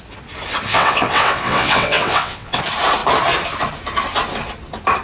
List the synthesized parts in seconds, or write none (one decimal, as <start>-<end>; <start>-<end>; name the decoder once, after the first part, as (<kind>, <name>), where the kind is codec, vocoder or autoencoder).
0.7-2.6 (vocoder, WaveNeXt)